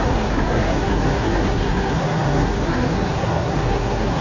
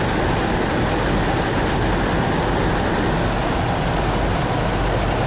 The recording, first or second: second